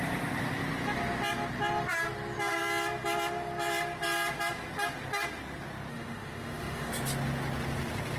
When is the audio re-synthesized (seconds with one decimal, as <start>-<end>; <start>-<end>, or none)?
5.9-6.9